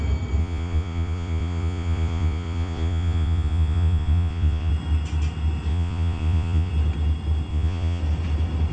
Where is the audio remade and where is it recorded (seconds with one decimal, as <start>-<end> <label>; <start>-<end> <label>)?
0.0-0.4 recorded; 0.4-4.7 remade; 4.7-5.7 recorded; 5.7-6.7 remade; 6.7-7.5 recorded; 7.5-8.0 remade; 8.0-8.7 recorded